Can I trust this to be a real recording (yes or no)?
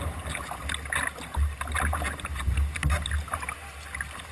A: yes